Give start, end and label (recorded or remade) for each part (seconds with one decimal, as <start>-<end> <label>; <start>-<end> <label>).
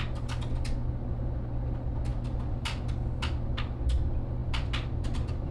0.0-2.1 recorded; 2.1-2.9 remade; 2.9-4.4 recorded; 4.4-5.5 remade